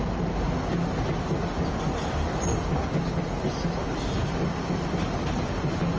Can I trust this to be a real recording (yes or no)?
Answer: yes